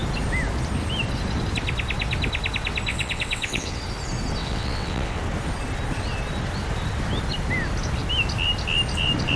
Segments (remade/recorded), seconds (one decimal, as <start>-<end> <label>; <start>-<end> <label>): 0.0-2.9 recorded; 2.9-3.8 remade; 3.8-4.4 recorded; 4.4-5.2 remade; 5.2-9.4 recorded